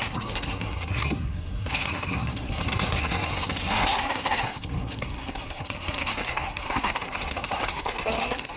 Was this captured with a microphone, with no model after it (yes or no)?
no